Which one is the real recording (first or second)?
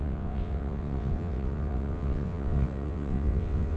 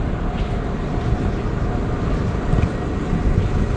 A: second